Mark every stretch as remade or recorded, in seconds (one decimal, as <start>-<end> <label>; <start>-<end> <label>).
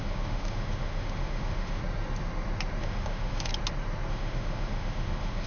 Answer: 0.0-1.8 remade; 1.8-2.8 recorded; 2.8-3.5 remade; 3.5-4.1 recorded; 4.1-5.5 remade